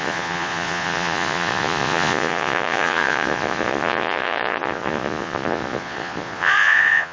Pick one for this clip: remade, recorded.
remade